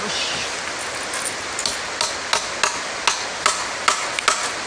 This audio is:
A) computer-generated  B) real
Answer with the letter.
B